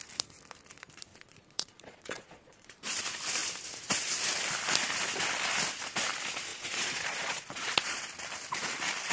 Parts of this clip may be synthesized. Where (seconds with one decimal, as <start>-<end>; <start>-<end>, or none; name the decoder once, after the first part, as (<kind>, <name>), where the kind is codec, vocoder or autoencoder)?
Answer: 1.1-3.0 (vocoder, Vocos); 6.5-8.0